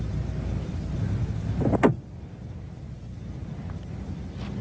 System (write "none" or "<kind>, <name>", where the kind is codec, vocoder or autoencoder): none